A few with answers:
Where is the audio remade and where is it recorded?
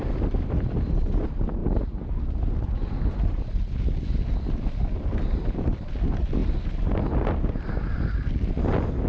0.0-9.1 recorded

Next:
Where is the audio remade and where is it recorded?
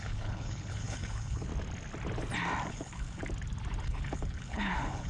0.0-1.5 remade; 1.5-2.7 recorded; 2.7-3.2 remade; 3.2-3.8 recorded; 3.8-5.1 remade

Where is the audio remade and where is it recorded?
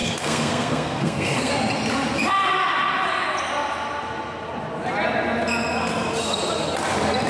0.0-1.5 remade; 1.5-7.3 recorded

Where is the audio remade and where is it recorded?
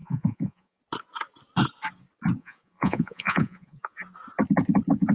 0.0-0.8 remade; 0.8-2.4 recorded; 2.4-4.0 remade; 4.0-5.1 recorded